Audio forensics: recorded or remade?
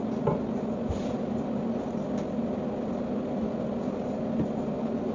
recorded